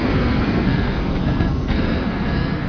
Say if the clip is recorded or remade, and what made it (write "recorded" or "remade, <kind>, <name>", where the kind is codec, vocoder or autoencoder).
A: remade, codec, SNAC